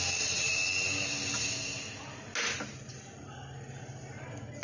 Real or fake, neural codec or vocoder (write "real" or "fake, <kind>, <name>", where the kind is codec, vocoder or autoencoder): real